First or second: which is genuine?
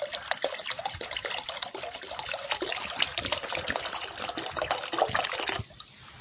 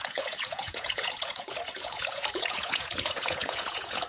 first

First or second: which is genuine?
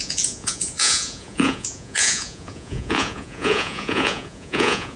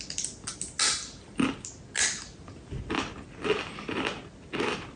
second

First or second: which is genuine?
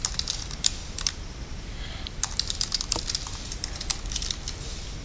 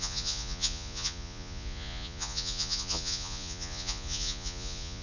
first